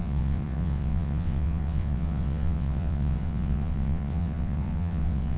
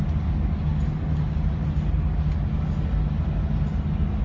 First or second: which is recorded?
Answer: second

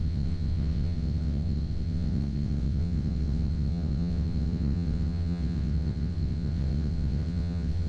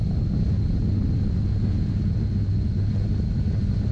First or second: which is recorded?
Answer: second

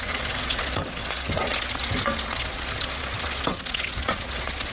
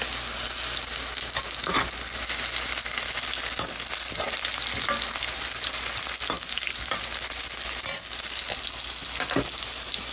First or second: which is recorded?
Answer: second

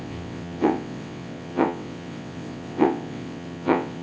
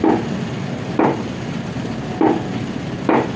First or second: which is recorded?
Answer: second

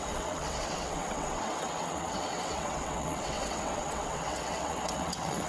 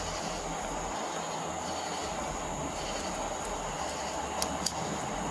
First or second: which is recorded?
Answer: second